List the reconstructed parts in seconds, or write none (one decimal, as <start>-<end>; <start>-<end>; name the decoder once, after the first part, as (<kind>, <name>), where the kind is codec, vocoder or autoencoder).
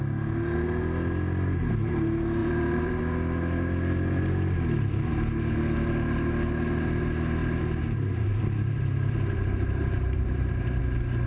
2.4-3.0 (vocoder, BigVGAN v2); 7.4-10.8